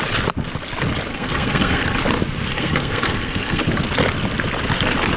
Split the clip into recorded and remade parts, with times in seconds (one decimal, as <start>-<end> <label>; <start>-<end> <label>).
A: 0.0-1.1 recorded; 1.1-2.0 remade; 2.0-2.5 recorded; 2.5-3.6 remade; 3.6-5.2 recorded